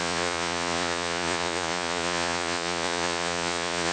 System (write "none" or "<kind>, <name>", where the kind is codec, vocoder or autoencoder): vocoder, Vocos